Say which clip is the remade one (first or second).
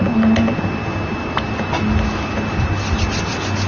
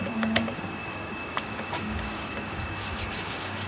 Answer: second